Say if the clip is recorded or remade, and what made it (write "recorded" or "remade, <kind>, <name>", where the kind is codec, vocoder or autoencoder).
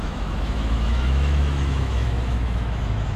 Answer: remade, autoencoder, DAC-VAE